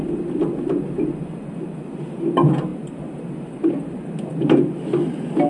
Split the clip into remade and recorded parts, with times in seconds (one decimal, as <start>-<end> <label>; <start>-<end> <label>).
0.0-2.7 recorded; 2.7-3.2 remade; 3.2-3.6 recorded; 3.6-4.3 remade; 4.3-5.5 recorded